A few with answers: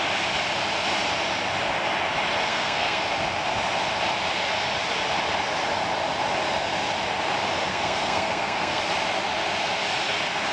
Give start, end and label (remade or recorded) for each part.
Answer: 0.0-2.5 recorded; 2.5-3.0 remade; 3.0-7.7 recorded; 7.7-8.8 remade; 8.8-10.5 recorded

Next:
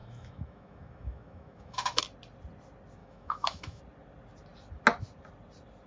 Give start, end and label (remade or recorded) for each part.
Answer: 0.0-2.0 remade; 2.0-3.0 recorded; 3.0-3.8 remade; 3.8-5.9 recorded